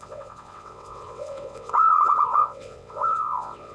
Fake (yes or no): yes